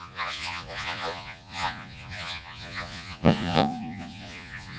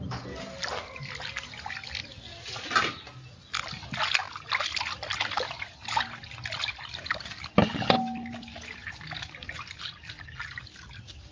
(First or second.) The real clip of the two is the second